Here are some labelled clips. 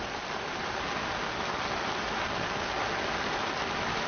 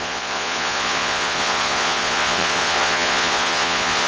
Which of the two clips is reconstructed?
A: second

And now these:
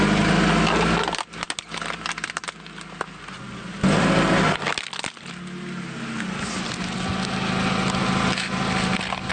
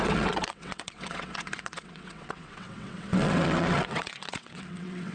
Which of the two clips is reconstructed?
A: second